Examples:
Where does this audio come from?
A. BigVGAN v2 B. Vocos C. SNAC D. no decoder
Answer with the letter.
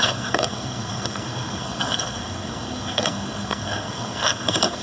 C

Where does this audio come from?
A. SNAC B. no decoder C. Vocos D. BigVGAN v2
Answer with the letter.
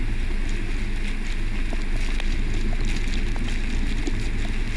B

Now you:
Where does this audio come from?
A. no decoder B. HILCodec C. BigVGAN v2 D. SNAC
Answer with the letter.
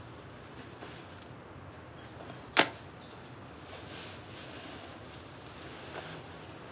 A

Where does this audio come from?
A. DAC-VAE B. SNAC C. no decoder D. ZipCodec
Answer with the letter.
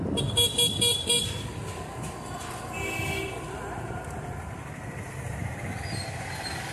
C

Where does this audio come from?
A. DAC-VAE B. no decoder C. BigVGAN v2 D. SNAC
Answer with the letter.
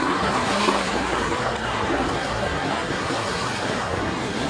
D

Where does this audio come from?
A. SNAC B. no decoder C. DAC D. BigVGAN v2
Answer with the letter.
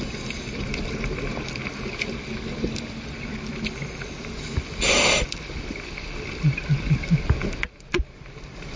B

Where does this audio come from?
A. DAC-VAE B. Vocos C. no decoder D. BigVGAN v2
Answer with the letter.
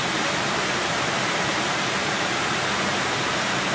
D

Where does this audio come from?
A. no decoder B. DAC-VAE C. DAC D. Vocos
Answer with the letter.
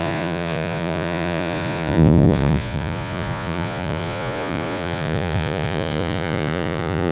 D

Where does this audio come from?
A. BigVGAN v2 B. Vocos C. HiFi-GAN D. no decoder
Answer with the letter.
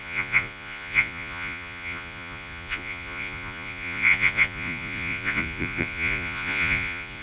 B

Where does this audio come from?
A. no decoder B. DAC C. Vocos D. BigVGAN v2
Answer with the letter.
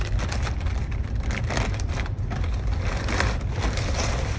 A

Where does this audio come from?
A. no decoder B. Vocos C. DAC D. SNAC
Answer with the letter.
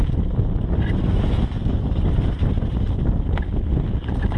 A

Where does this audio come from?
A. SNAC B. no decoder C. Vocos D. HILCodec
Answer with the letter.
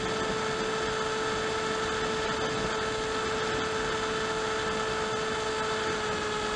B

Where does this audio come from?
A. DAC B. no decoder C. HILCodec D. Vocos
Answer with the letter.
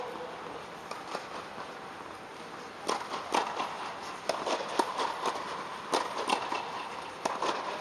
B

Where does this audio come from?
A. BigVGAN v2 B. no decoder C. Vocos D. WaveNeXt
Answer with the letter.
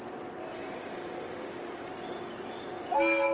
B